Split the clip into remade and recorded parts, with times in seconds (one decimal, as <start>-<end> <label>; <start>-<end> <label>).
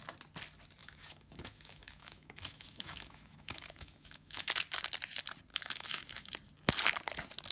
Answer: 0.0-0.8 recorded; 0.8-4.5 remade; 4.5-5.5 recorded; 5.5-6.3 remade; 6.3-7.5 recorded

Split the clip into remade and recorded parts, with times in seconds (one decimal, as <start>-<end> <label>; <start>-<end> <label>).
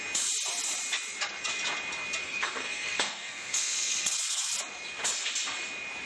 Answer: 0.0-2.2 recorded; 2.2-4.5 remade; 4.5-6.1 recorded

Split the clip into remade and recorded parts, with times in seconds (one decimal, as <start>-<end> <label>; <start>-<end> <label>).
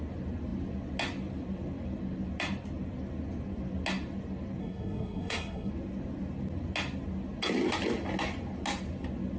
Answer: 0.0-4.6 recorded; 4.6-5.7 remade; 5.7-9.4 recorded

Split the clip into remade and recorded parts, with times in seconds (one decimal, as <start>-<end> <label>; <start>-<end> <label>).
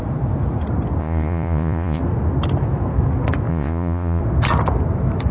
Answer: 0.0-1.0 recorded; 1.0-2.0 remade; 2.0-3.5 recorded; 3.5-4.2 remade; 4.2-5.3 recorded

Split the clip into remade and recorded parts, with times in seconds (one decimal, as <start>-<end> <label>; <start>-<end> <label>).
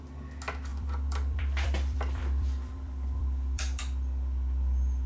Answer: 0.0-0.7 recorded; 0.7-3.8 remade; 3.8-5.1 recorded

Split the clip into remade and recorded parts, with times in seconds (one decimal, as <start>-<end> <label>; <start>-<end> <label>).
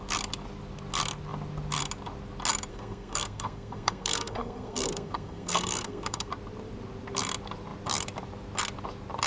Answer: 0.0-2.7 recorded; 2.7-6.3 remade; 6.3-9.3 recorded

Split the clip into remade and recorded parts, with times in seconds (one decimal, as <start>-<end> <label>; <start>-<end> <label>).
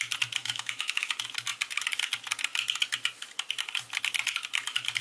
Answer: 0.0-0.4 recorded; 0.4-1.1 remade; 1.1-5.0 recorded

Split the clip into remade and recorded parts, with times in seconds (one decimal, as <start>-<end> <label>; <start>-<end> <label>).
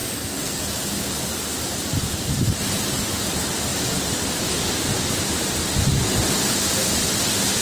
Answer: 0.0-0.6 remade; 0.6-7.6 recorded